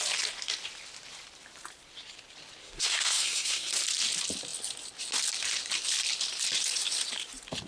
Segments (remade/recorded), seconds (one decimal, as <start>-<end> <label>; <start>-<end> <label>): 0.0-2.6 recorded; 2.6-3.7 remade; 3.7-7.7 recorded